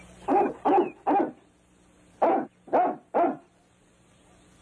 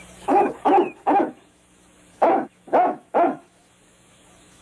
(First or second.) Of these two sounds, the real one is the first